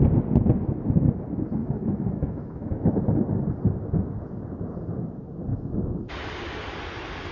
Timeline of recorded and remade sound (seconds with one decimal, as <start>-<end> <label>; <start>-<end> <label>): 0.0-1.6 recorded; 1.6-3.0 remade; 3.0-5.5 recorded; 5.5-6.1 remade; 6.1-7.3 recorded